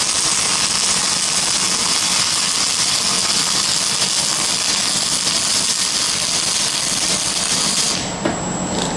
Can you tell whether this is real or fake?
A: real